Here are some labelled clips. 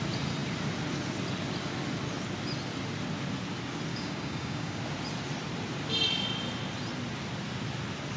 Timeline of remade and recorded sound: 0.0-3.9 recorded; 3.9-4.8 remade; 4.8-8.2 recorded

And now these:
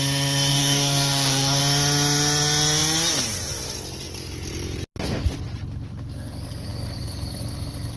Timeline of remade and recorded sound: 0.0-0.5 recorded; 0.5-1.6 remade; 1.6-8.0 recorded

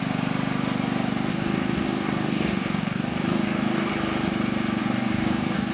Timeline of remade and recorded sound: 0.0-1.3 recorded; 1.3-3.9 remade; 3.9-4.8 recorded; 4.8-5.7 remade

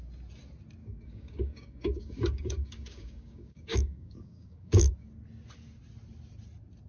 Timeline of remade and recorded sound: 0.0-0.8 recorded; 0.8-4.9 remade; 4.9-6.9 recorded

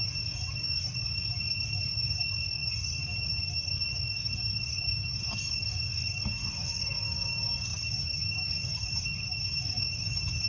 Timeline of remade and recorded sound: 0.0-10.5 remade